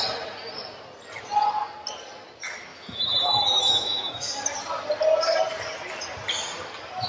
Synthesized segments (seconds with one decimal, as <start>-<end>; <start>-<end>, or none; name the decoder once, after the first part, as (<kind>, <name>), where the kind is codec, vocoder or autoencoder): 2.7-4.3 (autoencoder, DAC-VAE)